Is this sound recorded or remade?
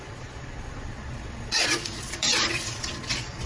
remade